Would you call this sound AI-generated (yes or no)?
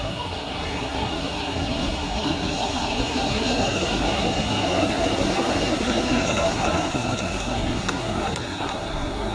yes